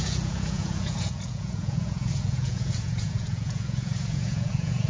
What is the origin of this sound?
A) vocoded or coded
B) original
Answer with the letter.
A